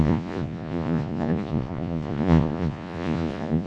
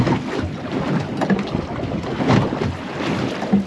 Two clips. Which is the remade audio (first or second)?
first